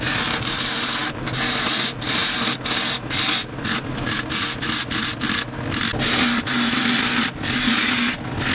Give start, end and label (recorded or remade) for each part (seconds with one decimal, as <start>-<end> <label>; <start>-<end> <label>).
0.0-8.5 recorded